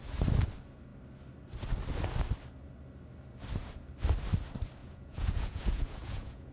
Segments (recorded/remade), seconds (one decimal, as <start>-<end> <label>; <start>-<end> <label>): 0.0-4.8 recorded; 4.8-6.5 remade